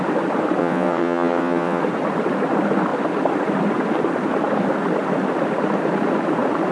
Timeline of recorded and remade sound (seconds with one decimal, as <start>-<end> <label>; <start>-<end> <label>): 0.0-0.6 recorded; 0.6-1.8 remade; 1.8-6.7 recorded